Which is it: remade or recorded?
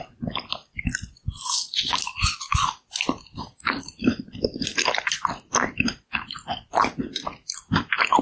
recorded